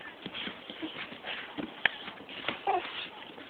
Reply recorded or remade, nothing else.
recorded